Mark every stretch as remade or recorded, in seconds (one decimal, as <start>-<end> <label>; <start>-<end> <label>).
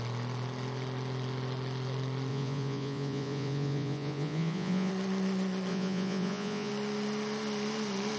0.0-2.3 recorded; 2.3-4.9 remade; 4.9-5.7 recorded; 5.7-6.7 remade; 6.7-8.2 recorded